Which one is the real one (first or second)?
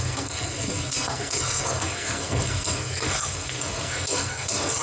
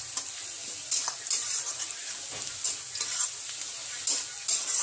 second